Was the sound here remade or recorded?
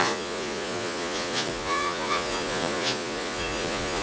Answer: remade